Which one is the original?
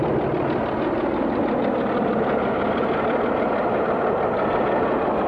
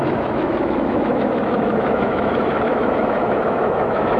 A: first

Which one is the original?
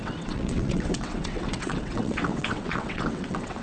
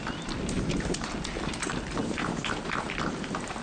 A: second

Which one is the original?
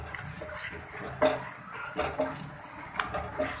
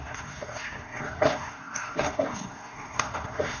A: first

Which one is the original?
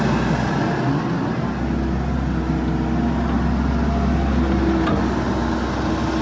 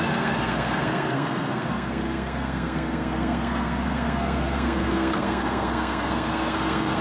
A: first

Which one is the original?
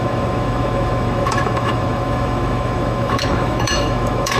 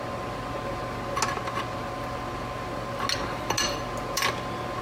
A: second